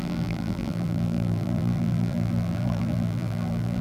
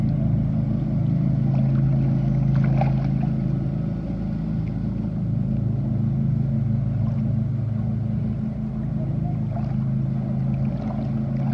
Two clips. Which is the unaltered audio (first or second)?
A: second